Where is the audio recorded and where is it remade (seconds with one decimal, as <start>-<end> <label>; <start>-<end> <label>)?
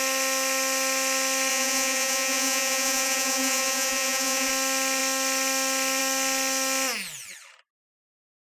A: 0.0-1.5 recorded; 1.5-4.5 remade; 4.5-8.4 recorded